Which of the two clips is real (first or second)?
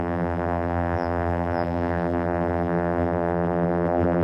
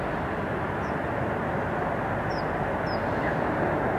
second